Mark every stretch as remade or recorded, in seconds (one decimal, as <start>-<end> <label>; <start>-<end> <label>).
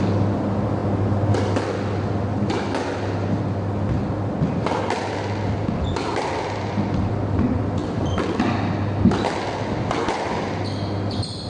0.0-11.5 recorded